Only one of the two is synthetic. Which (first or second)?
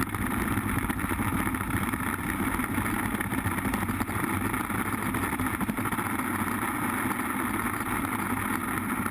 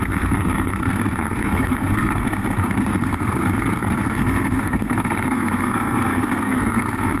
second